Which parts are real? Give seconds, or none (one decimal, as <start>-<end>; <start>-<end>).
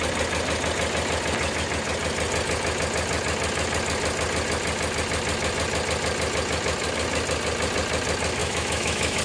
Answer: 0.0-8.4